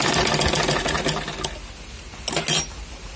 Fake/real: real